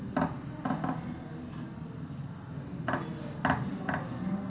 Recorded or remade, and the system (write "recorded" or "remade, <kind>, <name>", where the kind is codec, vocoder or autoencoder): recorded